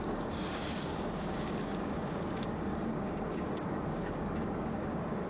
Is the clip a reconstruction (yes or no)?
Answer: yes